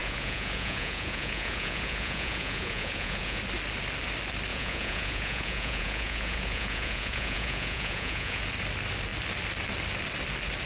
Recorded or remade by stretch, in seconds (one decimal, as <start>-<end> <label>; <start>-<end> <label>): 0.0-3.4 remade; 3.4-4.5 recorded; 4.5-8.4 remade; 8.4-10.7 recorded